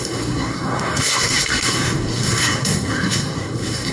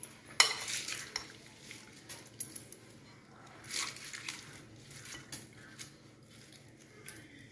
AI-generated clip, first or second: first